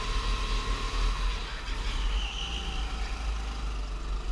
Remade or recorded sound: recorded